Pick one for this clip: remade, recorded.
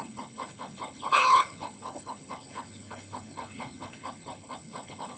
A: remade